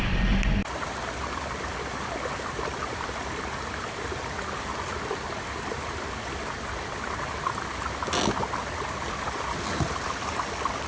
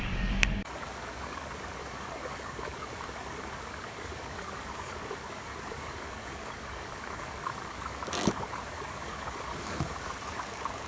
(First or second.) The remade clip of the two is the second